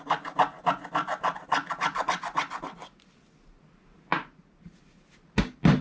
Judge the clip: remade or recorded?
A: recorded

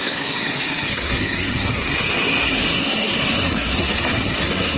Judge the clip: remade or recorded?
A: remade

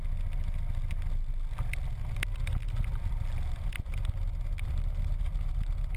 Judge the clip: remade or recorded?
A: recorded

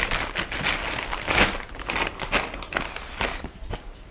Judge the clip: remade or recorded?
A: recorded